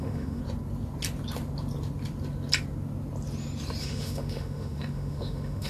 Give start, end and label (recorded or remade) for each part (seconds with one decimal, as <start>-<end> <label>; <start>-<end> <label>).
0.0-0.4 remade; 0.4-3.8 recorded; 3.8-5.7 remade